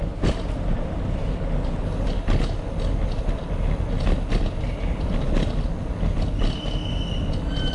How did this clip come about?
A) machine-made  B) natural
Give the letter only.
B